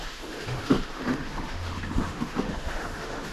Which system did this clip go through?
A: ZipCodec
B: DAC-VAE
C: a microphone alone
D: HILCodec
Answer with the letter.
B